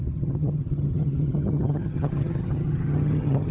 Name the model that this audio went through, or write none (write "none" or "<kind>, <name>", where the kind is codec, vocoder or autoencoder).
vocoder, HiFi-GAN